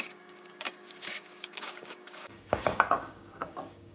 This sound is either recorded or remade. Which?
remade